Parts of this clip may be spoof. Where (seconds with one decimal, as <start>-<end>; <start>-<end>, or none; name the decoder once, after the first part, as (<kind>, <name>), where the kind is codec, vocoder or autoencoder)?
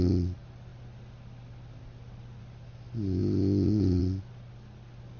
none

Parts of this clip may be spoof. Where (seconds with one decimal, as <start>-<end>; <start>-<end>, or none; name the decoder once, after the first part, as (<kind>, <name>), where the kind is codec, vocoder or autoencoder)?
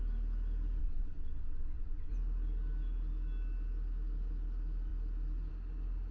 0.8-2.1 (vocoder, WaveNeXt)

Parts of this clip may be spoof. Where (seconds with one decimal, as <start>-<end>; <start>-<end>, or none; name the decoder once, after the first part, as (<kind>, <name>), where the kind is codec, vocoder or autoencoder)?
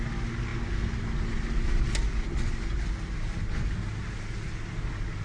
none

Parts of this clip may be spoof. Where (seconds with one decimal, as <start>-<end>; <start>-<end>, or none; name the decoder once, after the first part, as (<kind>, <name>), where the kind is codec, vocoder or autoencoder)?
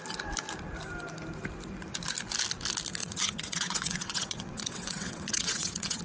3.0-6.0 (vocoder, WaveNeXt)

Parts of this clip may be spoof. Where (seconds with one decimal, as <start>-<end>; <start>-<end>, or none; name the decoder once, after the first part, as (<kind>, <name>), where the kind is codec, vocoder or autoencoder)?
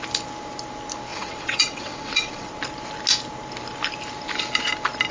1.1-2.5 (vocoder, WaveNeXt)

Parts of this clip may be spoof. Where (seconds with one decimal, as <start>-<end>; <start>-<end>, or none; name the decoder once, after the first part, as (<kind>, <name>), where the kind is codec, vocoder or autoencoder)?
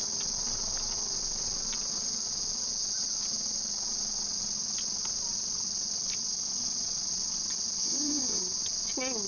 7.8-8.4 (vocoder, WaveNeXt)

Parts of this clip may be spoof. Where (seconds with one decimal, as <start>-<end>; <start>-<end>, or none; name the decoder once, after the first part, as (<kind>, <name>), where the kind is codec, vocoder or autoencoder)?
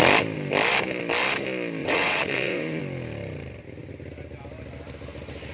1.8-2.8 (vocoder, WaveNeXt)